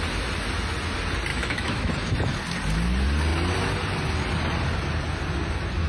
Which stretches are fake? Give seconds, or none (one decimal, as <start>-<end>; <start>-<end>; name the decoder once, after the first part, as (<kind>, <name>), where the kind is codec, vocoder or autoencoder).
1.3-1.9 (autoencoder, DAC-VAE)